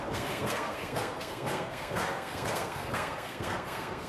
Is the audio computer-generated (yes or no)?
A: yes